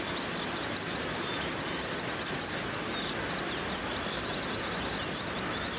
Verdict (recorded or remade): recorded